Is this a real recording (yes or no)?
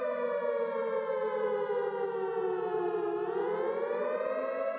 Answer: yes